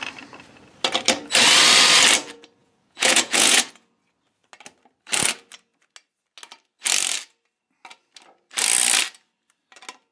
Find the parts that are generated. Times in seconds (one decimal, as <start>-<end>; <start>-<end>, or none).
2.6-3.7

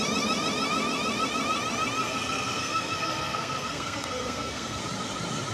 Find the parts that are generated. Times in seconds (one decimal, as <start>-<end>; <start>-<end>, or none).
2.0-4.8

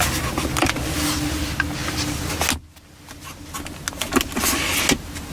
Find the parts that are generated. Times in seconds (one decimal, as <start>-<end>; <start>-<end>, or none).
none